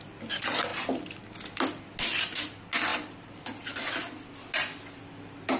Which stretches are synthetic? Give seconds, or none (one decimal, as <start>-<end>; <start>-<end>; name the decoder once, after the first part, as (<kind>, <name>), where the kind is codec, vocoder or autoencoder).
none